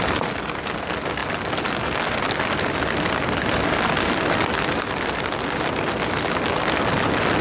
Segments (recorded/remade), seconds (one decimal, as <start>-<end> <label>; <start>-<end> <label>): 0.0-7.4 recorded